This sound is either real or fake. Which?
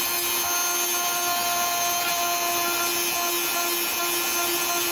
real